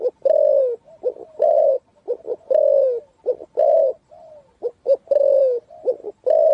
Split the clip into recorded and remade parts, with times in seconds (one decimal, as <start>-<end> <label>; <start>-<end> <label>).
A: 0.0-6.5 recorded